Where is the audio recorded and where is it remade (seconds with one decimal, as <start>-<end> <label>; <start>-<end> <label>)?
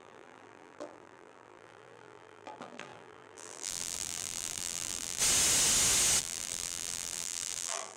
0.0-5.2 remade; 5.2-6.2 recorded; 6.2-8.0 remade